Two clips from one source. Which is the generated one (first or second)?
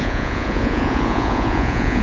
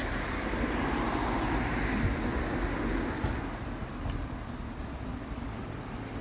first